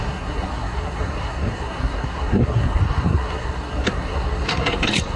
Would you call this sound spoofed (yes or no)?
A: yes